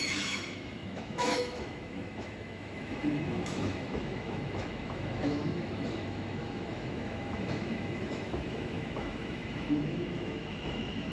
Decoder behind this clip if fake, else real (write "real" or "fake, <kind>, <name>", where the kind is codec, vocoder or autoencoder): fake, autoencoder, DAC-VAE